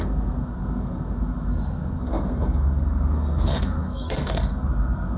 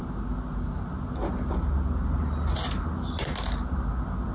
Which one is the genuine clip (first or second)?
second